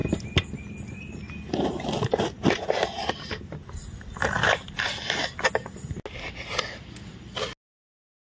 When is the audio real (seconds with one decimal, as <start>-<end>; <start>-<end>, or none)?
0.0-8.3